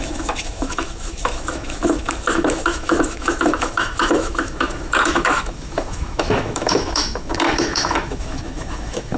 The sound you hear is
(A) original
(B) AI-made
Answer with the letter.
B